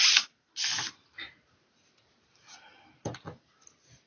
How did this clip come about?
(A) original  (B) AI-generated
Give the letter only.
A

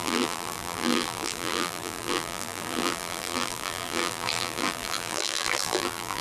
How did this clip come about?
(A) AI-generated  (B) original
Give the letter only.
A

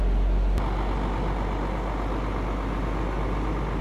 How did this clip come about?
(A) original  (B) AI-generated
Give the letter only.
A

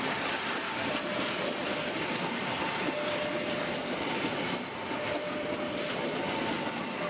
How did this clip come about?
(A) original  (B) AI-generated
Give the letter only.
A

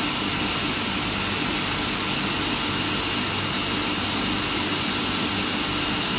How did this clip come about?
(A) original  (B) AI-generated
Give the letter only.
A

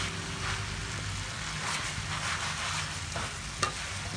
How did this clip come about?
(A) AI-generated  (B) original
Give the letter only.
B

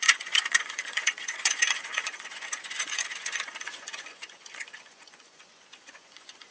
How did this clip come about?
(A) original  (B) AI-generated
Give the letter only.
B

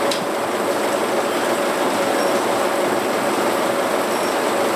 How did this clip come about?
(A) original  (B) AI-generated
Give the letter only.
A